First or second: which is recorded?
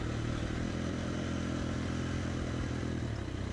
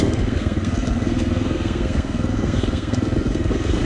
first